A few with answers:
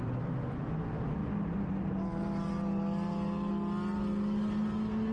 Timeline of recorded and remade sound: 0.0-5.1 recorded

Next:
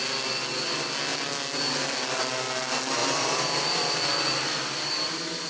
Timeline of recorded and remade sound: 0.0-3.0 recorded; 3.0-5.5 remade

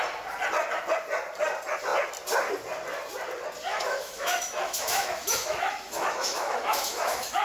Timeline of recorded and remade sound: 0.0-3.7 recorded; 3.7-7.4 remade

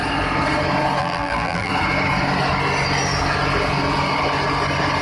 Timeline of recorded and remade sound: 0.0-1.0 recorded; 1.0-1.7 remade; 1.7-5.0 recorded

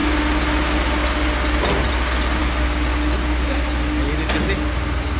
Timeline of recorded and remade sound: 0.0-5.2 recorded

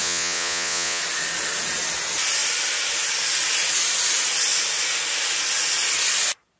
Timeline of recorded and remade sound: 0.0-1.0 remade; 1.0-6.6 recorded